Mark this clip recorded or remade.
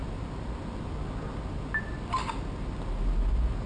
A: recorded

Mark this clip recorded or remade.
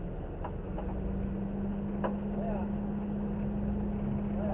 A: recorded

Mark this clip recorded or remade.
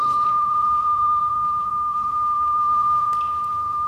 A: remade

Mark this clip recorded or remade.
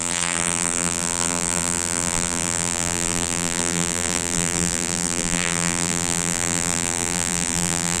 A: remade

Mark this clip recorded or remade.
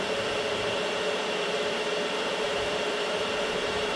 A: remade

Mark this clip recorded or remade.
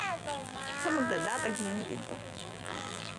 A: remade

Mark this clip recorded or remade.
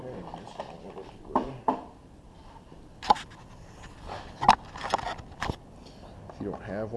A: recorded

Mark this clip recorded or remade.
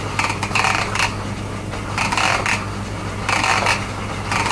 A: recorded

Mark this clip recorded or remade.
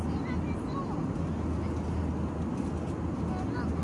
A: recorded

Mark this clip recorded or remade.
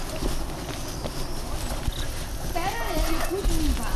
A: recorded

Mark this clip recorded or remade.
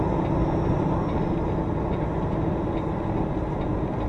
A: recorded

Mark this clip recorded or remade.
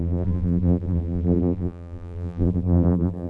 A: remade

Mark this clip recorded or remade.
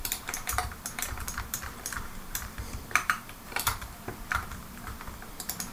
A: remade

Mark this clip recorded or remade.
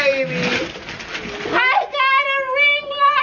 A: recorded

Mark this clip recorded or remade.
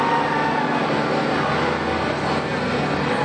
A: recorded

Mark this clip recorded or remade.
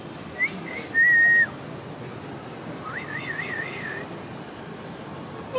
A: recorded